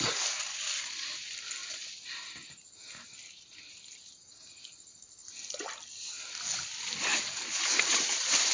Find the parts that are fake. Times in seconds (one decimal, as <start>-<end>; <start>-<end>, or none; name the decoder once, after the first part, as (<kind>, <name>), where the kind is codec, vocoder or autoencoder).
none